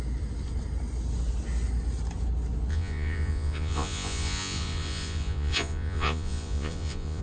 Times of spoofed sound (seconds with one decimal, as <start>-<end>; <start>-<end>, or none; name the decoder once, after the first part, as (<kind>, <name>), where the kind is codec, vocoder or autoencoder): 2.7-7.2 (vocoder, Vocos)